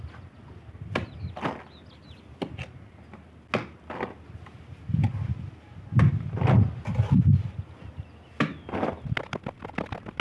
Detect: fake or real real